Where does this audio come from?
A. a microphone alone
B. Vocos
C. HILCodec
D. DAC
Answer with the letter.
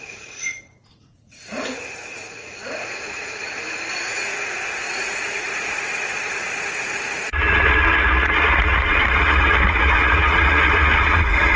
B